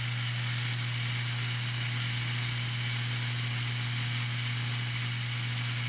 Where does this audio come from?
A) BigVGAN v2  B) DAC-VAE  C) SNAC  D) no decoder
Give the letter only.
D